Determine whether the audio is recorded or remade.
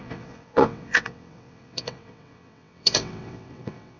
remade